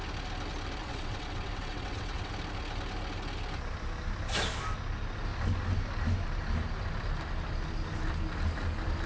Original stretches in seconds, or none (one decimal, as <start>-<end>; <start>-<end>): 0.0-0.8; 2.3-9.1